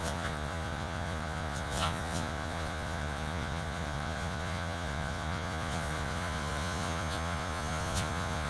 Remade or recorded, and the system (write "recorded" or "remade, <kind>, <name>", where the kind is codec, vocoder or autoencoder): remade, vocoder, Vocos